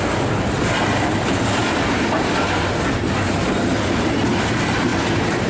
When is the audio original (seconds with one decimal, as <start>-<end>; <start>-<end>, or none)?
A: 0.0-5.5